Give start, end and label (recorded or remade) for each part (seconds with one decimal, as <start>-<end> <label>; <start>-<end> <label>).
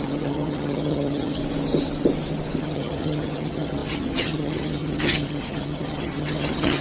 0.0-1.4 remade; 1.4-2.6 recorded; 2.6-6.8 remade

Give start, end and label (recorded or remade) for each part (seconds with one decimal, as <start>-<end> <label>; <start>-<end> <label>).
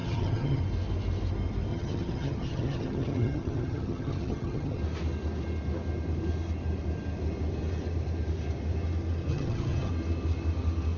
0.0-0.6 remade; 0.6-1.7 recorded; 1.7-4.8 remade; 4.8-9.3 recorded; 9.3-9.9 remade; 9.9-11.0 recorded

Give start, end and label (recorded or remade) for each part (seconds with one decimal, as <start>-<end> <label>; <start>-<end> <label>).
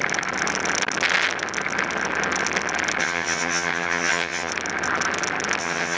0.0-3.0 recorded; 3.0-4.5 remade; 4.5-5.6 recorded; 5.6-6.0 remade